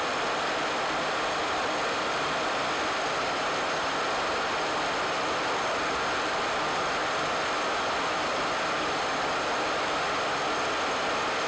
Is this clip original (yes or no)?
yes